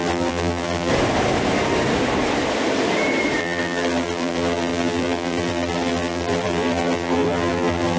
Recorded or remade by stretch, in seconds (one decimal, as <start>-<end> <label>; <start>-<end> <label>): 0.0-0.9 remade; 0.9-3.4 recorded; 3.4-8.0 remade